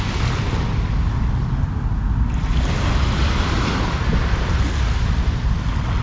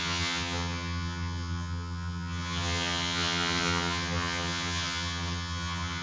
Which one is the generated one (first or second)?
second